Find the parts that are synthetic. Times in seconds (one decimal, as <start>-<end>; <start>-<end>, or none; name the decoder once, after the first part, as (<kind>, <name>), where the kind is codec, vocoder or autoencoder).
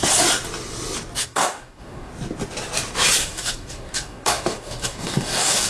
1.2-2.1 (codec, DAC); 3.2-5.7